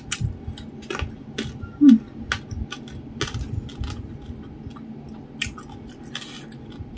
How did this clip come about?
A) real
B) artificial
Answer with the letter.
A